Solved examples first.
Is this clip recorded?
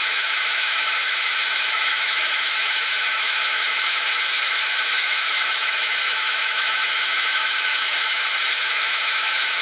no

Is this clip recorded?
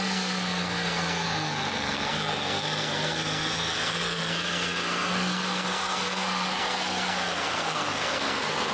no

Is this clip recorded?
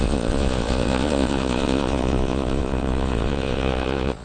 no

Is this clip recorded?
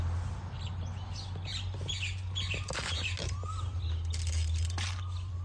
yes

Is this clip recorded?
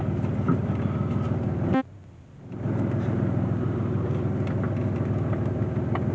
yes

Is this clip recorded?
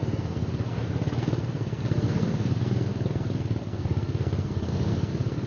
no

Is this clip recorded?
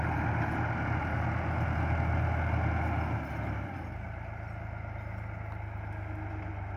yes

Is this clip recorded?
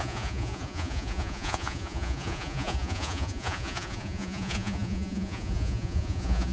no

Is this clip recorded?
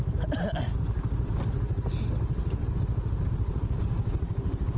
yes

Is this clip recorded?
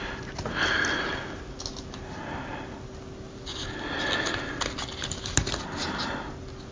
yes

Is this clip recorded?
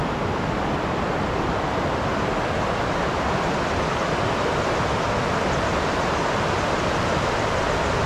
yes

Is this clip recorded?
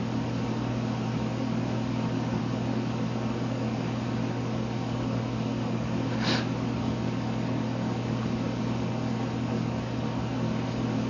no